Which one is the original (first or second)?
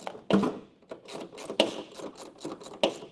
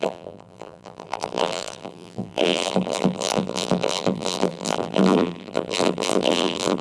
first